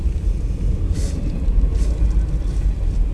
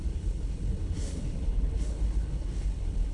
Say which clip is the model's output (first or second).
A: second